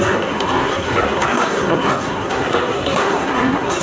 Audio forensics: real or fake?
fake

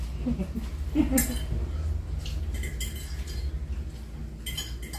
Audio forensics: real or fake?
real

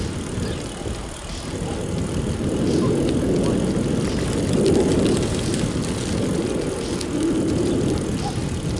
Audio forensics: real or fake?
real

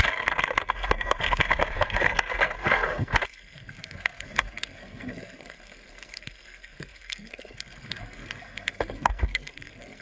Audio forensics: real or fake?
fake